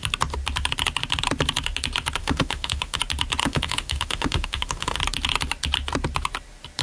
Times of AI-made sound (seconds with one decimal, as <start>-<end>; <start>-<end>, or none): 2.2-3.0; 3.4-5.0